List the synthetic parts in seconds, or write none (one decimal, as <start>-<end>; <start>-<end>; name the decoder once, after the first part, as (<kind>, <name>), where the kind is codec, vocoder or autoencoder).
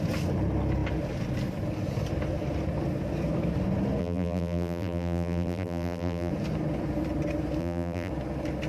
4.0-6.3 (vocoder, BigVGAN v2); 7.6-8.1